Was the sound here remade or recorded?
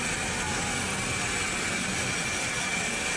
recorded